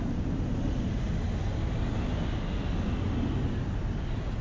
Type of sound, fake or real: real